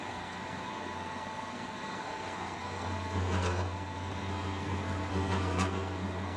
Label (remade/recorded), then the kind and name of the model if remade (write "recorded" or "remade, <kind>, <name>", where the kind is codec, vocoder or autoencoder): remade, codec, SNAC